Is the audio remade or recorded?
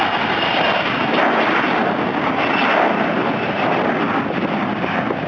recorded